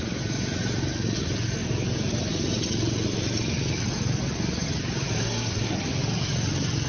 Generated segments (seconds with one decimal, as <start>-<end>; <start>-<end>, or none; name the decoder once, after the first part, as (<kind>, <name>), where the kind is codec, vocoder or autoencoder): 5.2-5.8 (codec, SNAC)